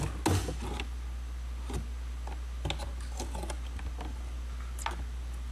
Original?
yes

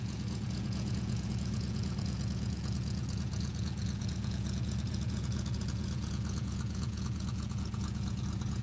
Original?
no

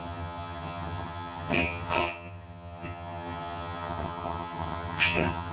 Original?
no